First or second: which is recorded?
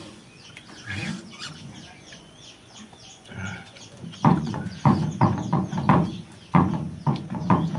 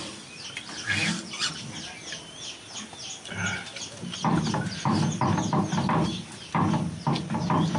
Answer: second